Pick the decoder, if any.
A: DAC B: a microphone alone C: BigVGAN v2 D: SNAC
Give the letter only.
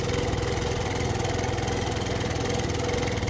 B